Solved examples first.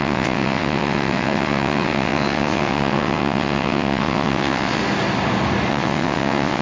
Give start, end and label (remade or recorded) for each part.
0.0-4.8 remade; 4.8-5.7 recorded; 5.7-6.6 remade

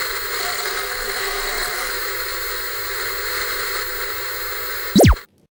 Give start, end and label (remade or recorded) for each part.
0.0-0.4 recorded; 0.4-1.9 remade; 1.9-5.5 recorded

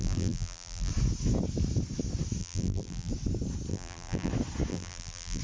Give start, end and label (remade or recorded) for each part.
0.0-0.9 remade; 0.9-2.4 recorded; 2.4-3.1 remade; 3.1-3.7 recorded; 3.7-4.3 remade; 4.3-4.7 recorded; 4.7-5.4 remade

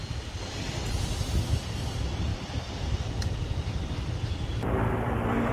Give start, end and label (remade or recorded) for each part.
0.0-2.3 recorded; 2.3-3.8 remade; 3.8-4.5 recorded; 4.5-5.5 remade

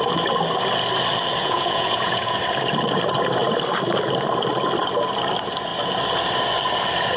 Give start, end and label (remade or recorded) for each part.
0.0-1.4 recorded; 1.4-2.4 remade; 2.4-7.2 recorded

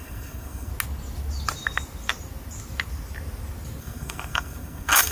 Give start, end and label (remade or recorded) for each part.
0.0-0.7 remade; 0.7-3.8 recorded; 3.8-5.1 remade